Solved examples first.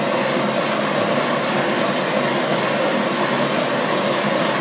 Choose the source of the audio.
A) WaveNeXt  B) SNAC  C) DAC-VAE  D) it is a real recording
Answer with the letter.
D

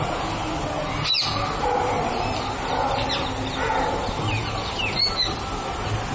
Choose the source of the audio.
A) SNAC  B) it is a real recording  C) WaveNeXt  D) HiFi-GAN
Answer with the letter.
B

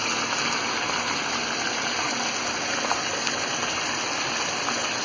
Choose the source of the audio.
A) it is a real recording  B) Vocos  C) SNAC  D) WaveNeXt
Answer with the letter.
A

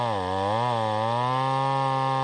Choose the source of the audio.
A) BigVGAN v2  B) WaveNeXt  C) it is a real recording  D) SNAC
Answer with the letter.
C